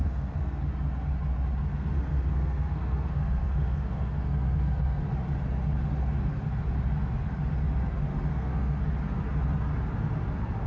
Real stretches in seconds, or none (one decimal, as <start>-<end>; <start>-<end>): 0.6-1.7; 5.0-8.3; 8.8-10.7